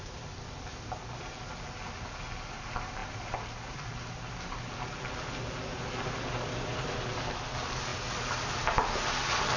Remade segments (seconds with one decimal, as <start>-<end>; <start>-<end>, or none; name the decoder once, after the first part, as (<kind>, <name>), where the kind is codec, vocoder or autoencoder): none